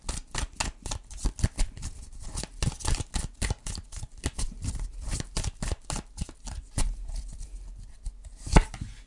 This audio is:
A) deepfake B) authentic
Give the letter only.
B